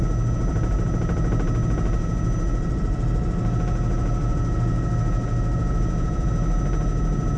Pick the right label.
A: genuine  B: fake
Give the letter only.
A